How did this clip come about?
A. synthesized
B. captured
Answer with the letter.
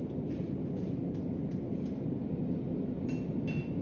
B